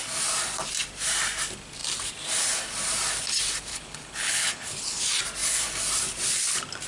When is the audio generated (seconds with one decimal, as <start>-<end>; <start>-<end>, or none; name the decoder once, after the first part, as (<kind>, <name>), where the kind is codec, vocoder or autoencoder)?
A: 3.7-5.0 (codec, HILCodec)